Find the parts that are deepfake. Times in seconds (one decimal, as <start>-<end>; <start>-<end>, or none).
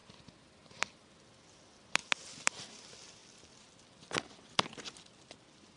none